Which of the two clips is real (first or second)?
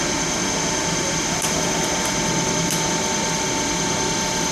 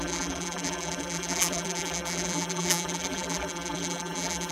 first